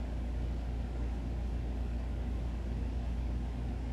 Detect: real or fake fake